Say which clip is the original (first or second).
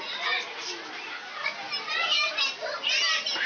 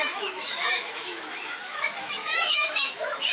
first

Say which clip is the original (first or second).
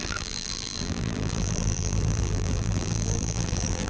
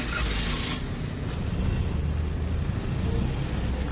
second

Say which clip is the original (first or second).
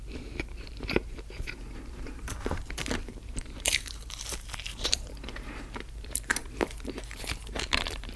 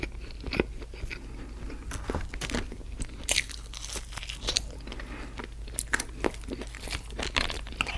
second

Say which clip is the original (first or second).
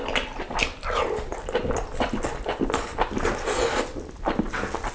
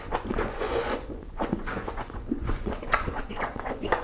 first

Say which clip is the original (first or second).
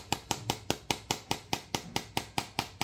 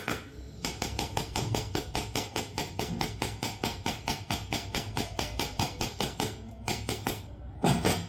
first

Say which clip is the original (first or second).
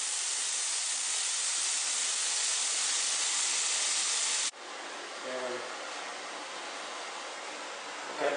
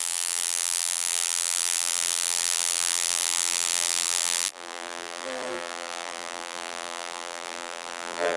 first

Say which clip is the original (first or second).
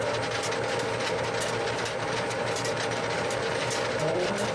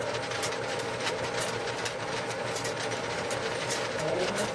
first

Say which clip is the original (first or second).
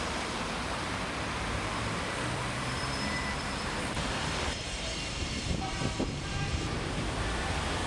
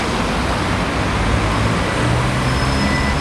second